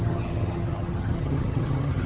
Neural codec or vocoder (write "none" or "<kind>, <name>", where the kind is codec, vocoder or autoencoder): vocoder, HiFi-GAN